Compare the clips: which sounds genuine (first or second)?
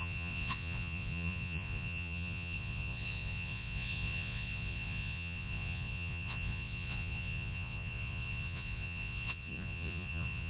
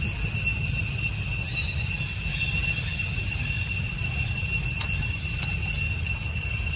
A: second